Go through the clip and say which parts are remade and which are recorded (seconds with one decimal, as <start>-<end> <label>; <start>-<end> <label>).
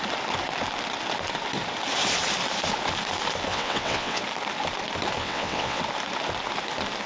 0.0-3.5 recorded; 3.5-4.2 remade; 4.2-5.2 recorded; 5.2-5.8 remade; 5.8-7.1 recorded